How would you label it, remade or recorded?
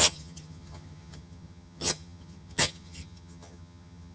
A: remade